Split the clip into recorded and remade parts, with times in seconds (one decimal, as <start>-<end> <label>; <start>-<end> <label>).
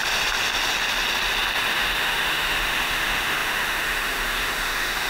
0.0-1.7 recorded; 1.7-5.1 remade